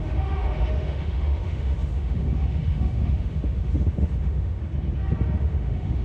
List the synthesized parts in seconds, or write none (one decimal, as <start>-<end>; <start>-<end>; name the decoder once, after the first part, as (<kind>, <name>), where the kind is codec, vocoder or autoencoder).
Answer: 0.0-4.6 (autoencoder, DAC-VAE); 5.4-6.0